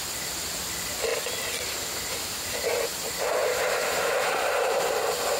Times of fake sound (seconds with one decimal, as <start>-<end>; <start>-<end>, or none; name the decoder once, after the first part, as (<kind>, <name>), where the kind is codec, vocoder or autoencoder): 3.4-4.9 (vocoder, BigVGAN v2)